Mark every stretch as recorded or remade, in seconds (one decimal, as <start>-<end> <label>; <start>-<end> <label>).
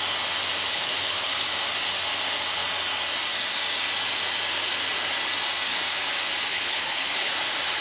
0.0-0.7 recorded; 0.7-1.5 remade; 1.5-6.5 recorded; 6.5-7.3 remade; 7.3-7.8 recorded